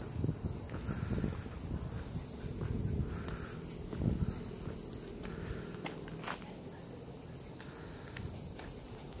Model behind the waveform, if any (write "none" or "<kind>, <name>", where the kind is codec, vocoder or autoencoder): none